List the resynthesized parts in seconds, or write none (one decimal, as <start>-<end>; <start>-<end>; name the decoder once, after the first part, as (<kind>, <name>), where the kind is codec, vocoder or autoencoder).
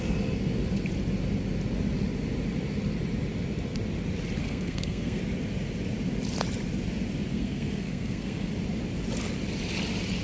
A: 4.4-5.2 (codec, SNAC); 7.3-8.5